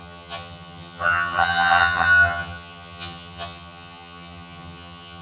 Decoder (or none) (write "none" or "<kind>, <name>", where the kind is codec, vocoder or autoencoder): vocoder, HiFi-GAN